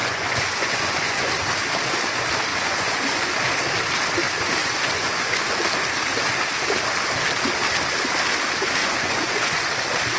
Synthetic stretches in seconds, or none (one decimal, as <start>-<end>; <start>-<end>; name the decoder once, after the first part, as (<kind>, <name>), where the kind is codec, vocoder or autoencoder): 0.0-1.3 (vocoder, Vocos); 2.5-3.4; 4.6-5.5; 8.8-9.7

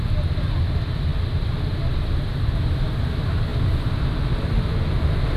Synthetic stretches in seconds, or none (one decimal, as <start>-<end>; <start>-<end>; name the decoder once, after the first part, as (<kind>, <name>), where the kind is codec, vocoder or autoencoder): none

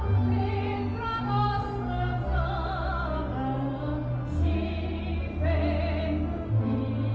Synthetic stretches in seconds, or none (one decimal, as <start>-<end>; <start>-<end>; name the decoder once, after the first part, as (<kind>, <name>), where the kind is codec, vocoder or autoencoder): none

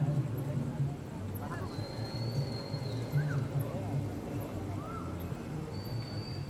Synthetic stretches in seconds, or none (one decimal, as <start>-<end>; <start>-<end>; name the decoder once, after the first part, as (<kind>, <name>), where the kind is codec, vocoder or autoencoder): 4.1-4.6 (vocoder, BigVGAN v2)

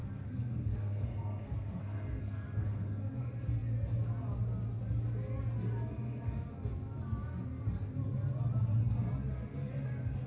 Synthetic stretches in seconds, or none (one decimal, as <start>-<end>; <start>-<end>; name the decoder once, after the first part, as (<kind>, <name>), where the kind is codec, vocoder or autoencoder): 0.0-3.2 (codec, SNAC)